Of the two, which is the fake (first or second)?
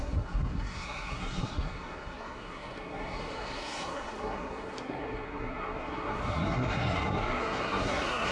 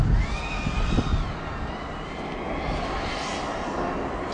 first